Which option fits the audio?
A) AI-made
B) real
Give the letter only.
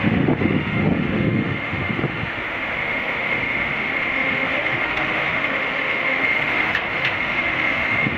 A